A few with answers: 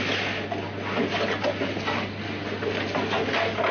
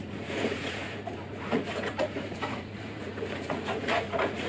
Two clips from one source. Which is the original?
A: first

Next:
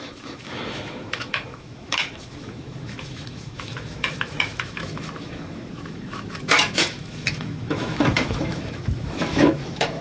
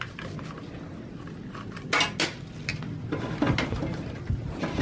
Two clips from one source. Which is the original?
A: second